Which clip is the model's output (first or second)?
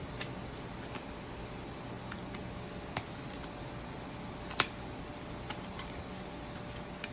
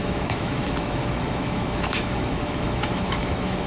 second